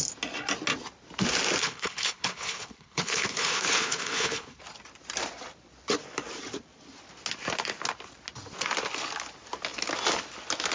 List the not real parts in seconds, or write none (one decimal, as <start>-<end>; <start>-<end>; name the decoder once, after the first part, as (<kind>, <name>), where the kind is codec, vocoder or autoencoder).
1.6-4.6 (codec, HILCodec)